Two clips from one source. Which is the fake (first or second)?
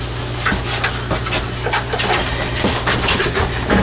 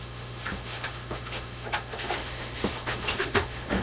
second